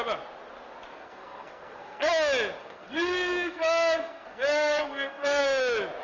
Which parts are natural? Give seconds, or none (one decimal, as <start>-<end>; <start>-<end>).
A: 0.0-0.9; 2.1-2.6; 5.4-6.0